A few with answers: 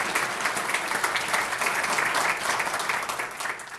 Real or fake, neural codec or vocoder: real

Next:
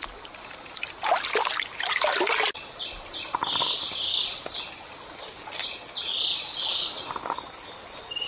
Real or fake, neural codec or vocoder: real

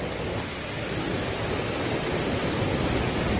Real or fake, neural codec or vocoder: real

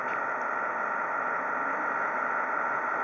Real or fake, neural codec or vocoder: real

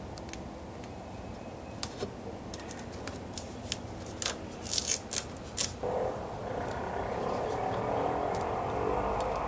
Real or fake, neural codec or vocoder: real